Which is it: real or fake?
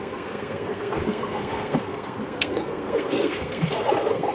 fake